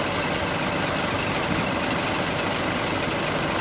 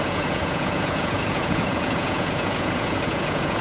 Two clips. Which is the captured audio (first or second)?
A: first